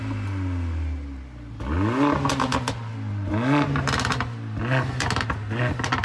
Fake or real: real